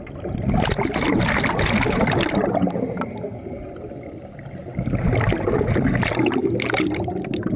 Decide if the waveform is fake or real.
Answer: real